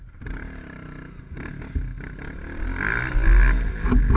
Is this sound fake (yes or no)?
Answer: no